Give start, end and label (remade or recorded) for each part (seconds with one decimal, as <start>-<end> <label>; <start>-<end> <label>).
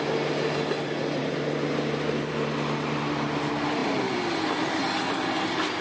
0.0-5.8 recorded